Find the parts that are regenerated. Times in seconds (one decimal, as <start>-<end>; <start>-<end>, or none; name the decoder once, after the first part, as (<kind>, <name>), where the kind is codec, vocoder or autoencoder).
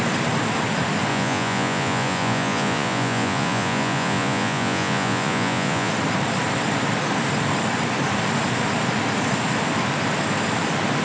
1.1-5.9 (vocoder, Vocos)